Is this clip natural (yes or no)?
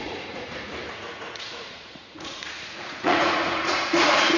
no